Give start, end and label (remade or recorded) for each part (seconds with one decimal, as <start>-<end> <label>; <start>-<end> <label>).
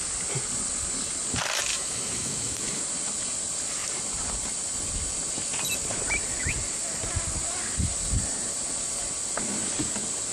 0.0-1.7 recorded; 1.7-2.8 remade; 2.8-10.3 recorded